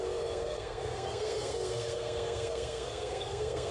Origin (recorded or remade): remade